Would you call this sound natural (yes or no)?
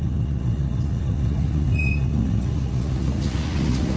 no